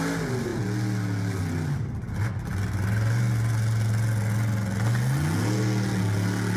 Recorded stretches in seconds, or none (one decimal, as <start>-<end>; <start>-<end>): 0.0-6.6